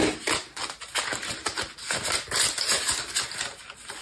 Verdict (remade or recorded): recorded